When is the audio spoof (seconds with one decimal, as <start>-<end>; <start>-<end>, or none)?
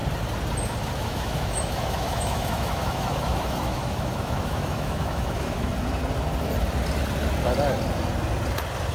1.0-5.7